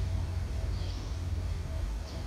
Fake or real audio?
fake